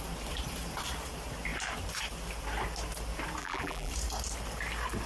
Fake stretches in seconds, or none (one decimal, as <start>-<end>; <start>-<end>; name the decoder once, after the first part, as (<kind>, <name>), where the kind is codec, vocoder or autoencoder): 3.4-3.9 (vocoder, BigVGAN v2)